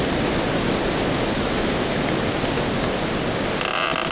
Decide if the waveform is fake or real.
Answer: real